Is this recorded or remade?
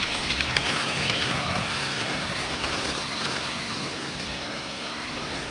remade